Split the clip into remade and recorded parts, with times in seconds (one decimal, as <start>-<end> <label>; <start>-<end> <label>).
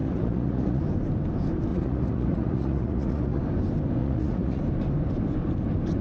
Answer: 0.0-0.8 remade; 0.8-1.7 recorded; 1.7-3.4 remade; 3.4-4.0 recorded; 4.0-4.6 remade; 4.6-6.0 recorded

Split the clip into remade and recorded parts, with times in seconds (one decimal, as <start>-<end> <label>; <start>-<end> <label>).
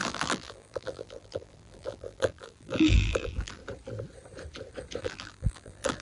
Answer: 0.0-3.6 remade; 3.6-5.0 recorded; 5.0-6.0 remade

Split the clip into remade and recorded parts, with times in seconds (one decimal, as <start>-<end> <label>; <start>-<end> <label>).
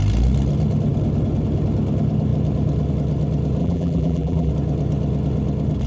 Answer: 0.0-3.6 recorded; 3.6-4.5 remade; 4.5-5.9 recorded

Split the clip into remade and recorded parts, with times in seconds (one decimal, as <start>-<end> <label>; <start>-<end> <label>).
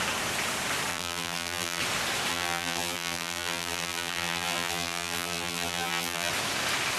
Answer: 0.0-0.9 recorded; 0.9-1.8 remade; 1.8-2.3 recorded; 2.3-6.3 remade; 6.3-7.0 recorded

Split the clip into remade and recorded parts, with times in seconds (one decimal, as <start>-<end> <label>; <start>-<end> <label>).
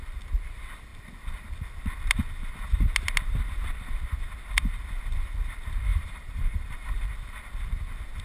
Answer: 0.0-5.9 recorded; 5.9-7.1 remade; 7.1-8.2 recorded